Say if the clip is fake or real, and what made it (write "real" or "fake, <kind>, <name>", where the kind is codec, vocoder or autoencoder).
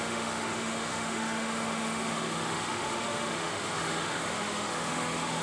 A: fake, autoencoder, DAC-VAE